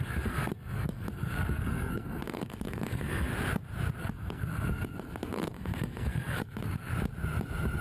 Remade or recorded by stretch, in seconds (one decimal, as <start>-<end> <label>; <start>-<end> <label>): 0.0-3.3 remade; 3.3-4.0 recorded; 4.0-6.9 remade; 6.9-7.8 recorded